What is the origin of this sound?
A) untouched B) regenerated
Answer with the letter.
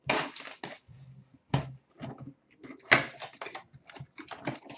A